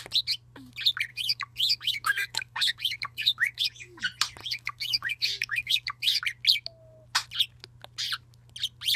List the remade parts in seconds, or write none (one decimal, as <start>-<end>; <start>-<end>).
1.1-4.0; 4.4-6.2